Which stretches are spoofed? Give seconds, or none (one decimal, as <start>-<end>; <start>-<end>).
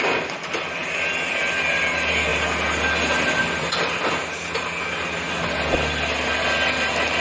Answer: none